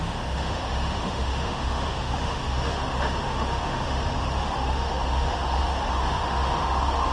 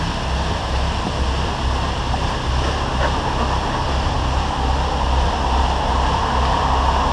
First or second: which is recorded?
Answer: second